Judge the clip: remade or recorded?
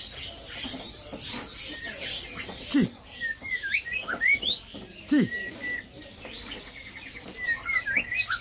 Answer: recorded